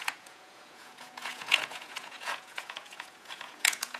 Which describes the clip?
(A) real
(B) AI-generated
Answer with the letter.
B